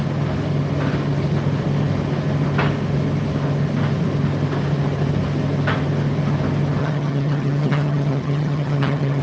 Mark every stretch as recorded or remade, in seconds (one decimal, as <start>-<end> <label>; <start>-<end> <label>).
0.0-6.8 recorded; 6.8-9.2 remade